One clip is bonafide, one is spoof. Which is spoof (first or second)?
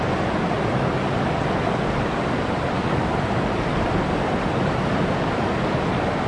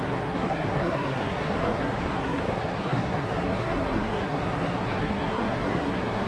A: second